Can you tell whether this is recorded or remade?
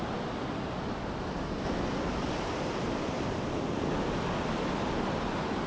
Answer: recorded